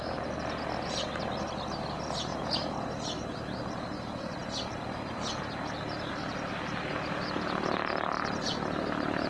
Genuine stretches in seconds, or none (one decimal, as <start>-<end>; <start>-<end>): 0.0-2.3; 3.4-9.3

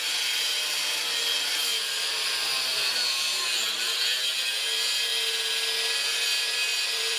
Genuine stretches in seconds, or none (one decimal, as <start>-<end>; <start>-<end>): 5.1-6.1